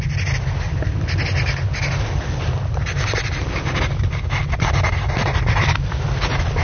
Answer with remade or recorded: recorded